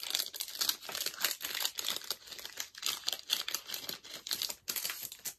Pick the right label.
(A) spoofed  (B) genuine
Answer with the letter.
B